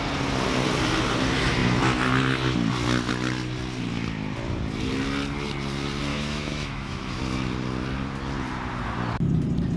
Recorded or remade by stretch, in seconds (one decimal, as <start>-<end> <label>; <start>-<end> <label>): 0.0-6.1 recorded; 6.1-7.2 remade; 7.2-9.8 recorded